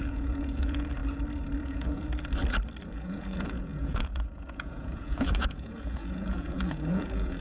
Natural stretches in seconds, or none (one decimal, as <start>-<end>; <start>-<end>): 1.0-1.6; 2.1-2.9

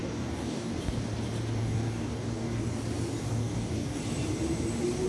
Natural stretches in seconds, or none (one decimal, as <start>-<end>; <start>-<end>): 0.7-1.6; 2.7-3.2; 4.0-5.1

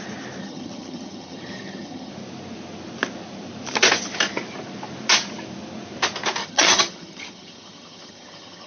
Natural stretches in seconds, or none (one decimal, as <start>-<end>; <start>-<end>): 0.0-0.4; 2.1-6.4

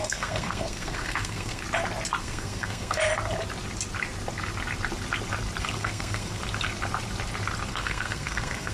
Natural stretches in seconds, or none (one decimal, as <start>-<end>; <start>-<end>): 1.6-2.2; 3.1-5.6; 6.4-7.7

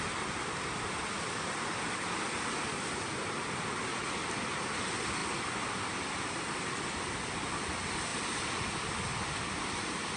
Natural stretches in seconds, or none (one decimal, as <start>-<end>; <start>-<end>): 0.0-10.2